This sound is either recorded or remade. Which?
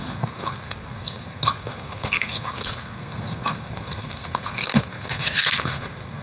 remade